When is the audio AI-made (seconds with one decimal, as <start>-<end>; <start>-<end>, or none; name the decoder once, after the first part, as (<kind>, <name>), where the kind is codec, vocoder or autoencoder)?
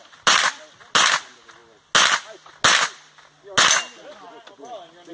none